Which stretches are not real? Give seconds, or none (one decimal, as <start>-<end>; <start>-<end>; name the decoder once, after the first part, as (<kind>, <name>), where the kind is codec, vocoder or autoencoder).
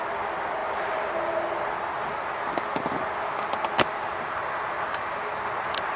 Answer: none